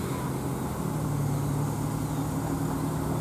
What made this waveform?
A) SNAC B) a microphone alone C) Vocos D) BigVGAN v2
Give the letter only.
B